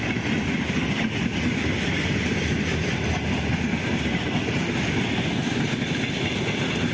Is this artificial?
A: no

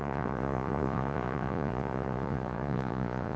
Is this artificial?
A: yes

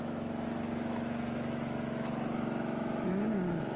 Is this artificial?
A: yes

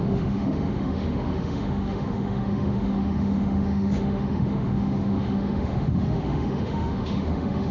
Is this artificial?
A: yes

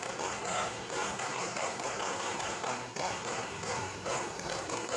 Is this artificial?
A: yes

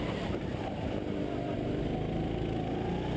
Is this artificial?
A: no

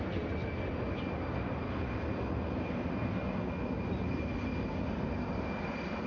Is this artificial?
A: no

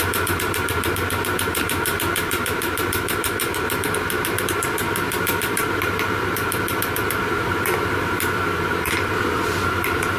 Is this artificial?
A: yes